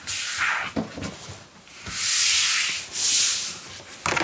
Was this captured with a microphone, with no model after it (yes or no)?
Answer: yes